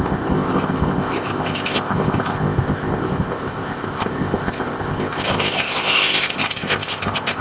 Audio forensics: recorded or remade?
remade